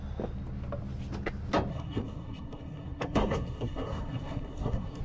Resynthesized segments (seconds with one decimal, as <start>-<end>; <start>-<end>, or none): 1.7-5.0